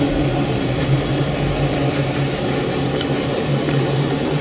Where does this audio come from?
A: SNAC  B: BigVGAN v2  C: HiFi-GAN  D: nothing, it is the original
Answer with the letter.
B